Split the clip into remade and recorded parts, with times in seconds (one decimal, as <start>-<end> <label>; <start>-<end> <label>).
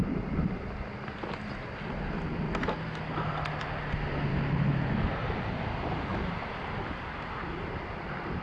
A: 0.0-4.3 recorded; 4.3-5.1 remade; 5.1-8.4 recorded